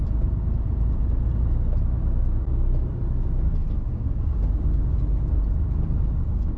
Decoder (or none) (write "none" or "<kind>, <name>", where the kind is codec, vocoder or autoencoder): none